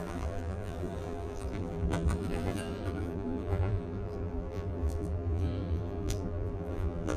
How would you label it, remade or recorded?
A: remade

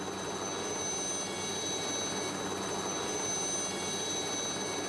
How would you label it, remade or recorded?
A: recorded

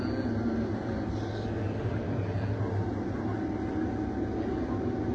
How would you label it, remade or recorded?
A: recorded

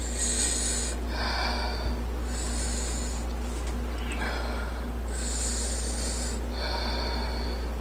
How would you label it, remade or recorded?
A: recorded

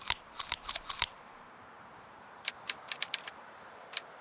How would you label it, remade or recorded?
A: remade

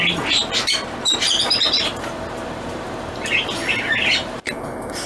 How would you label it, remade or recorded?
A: remade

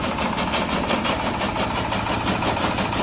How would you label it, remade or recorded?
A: remade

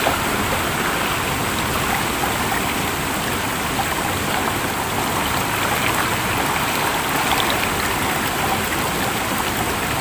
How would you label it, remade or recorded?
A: recorded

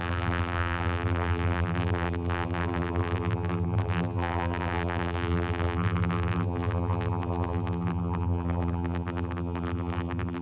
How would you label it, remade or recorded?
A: remade